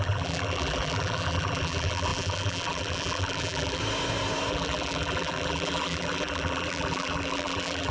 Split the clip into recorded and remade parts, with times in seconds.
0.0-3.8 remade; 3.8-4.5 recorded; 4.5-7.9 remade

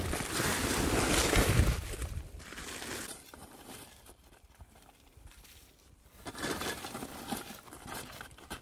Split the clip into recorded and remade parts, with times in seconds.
0.0-2.0 recorded; 2.0-6.8 remade; 6.8-8.6 recorded

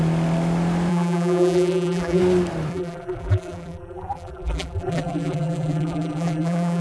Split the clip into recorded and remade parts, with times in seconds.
0.0-0.9 recorded; 0.9-2.2 remade; 2.2-2.7 recorded; 2.7-6.8 remade

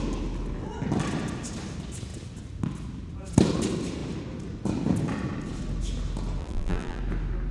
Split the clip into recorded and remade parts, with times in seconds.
0.0-6.4 recorded; 6.4-7.0 remade; 7.0-7.5 recorded

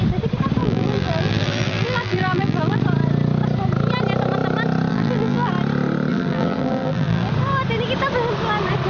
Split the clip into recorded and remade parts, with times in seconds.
0.0-0.6 recorded; 0.6-2.8 remade; 2.8-4.9 recorded; 4.9-5.5 remade; 5.5-6.1 recorded; 6.1-7.3 remade; 7.3-8.9 recorded